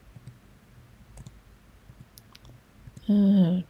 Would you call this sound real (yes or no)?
yes